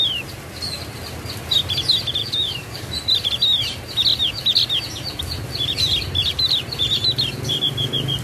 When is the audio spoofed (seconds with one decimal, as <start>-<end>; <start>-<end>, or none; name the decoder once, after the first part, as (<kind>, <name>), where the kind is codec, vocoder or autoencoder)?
2.2-2.9 (codec, DAC)